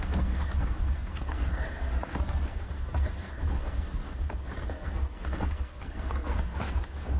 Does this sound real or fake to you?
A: fake